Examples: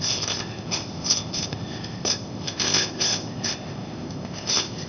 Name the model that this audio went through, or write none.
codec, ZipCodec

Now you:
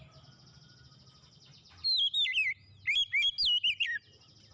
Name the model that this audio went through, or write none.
none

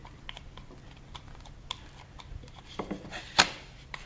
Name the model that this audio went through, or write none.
none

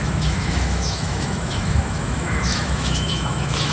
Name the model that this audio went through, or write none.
autoencoder, DAC-VAE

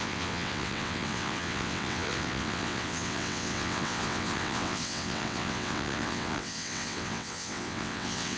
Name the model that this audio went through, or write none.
vocoder, WaveNeXt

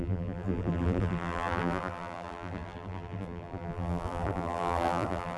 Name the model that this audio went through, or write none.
vocoder, BigVGAN v2